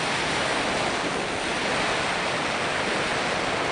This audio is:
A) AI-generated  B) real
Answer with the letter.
B